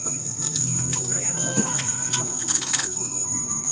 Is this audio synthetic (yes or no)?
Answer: yes